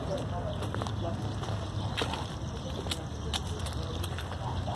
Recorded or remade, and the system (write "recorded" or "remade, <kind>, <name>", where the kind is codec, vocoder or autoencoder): recorded